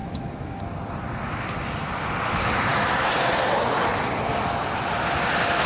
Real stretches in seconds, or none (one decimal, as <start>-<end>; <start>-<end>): 0.6-5.7